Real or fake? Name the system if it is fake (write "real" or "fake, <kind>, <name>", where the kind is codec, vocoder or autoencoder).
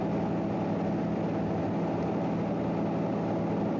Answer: real